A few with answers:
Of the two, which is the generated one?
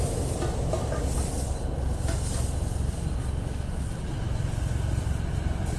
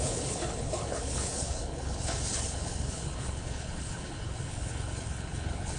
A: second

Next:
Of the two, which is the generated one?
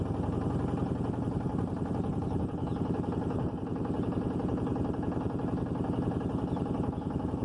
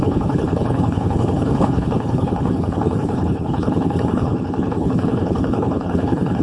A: second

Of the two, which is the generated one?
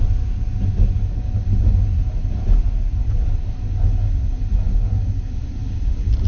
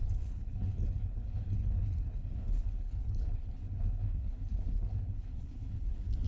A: second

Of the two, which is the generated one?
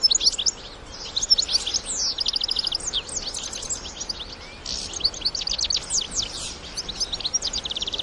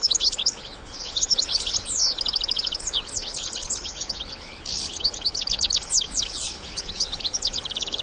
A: second